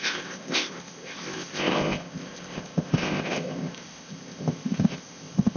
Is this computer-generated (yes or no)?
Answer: yes